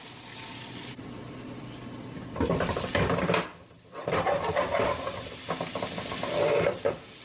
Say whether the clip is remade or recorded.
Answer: recorded